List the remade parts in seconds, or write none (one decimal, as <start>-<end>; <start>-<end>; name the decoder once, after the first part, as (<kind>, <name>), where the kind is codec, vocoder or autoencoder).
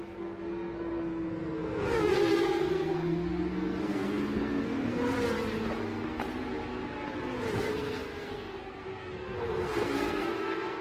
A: 0.0-5.0 (codec, SNAC); 5.8-6.2; 7.6-10.8